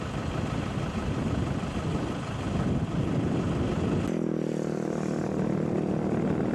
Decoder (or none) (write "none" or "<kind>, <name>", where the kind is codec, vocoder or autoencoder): none